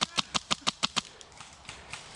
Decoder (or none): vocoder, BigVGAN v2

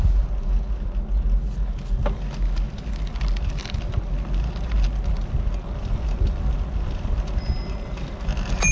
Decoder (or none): none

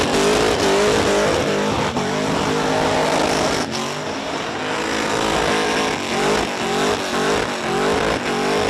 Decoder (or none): none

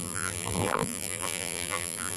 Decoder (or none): vocoder, BigVGAN v2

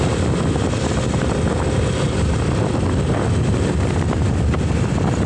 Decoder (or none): none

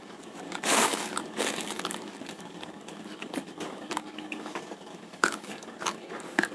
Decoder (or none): codec, DAC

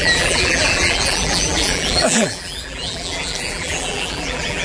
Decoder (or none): vocoder, BigVGAN v2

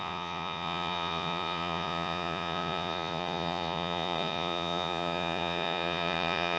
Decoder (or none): vocoder, Vocos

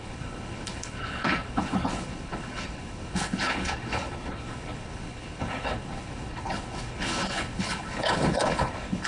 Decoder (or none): codec, HILCodec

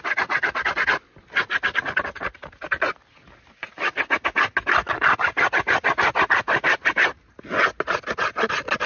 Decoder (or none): none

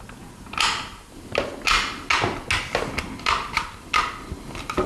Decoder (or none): none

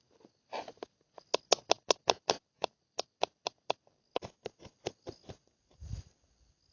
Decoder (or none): none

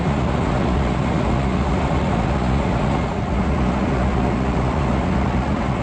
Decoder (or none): vocoder, Vocos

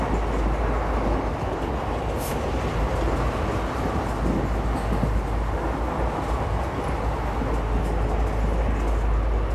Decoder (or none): none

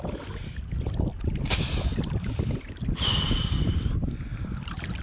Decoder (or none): none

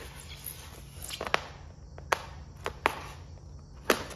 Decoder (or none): none